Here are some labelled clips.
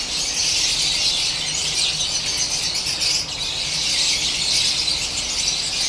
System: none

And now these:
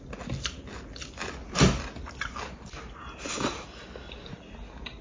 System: none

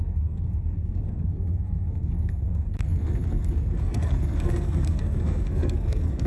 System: codec, SNAC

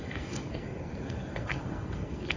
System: codec, SNAC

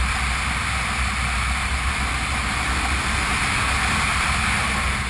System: none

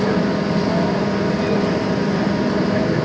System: none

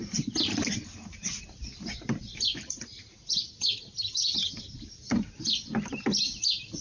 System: none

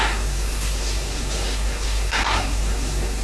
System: codec, SNAC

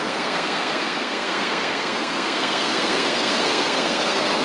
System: codec, SNAC